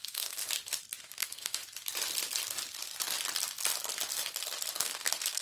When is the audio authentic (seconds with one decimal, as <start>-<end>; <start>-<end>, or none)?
0.4-1.0; 1.6-4.8